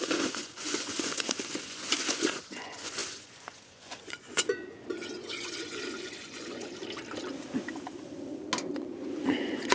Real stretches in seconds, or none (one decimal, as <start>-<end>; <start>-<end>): 6.8-8.7